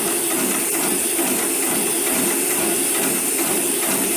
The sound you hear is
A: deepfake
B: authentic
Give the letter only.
B